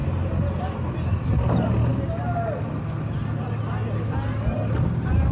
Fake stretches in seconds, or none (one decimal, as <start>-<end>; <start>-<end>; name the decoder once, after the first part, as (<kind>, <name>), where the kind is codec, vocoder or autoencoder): none